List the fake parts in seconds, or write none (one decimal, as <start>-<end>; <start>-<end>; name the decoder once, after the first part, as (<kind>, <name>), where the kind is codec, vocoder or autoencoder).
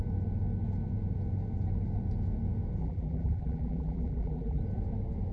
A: 2.8-4.6 (vocoder, BigVGAN v2)